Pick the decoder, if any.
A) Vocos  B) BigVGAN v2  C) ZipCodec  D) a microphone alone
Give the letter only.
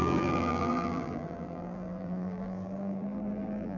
B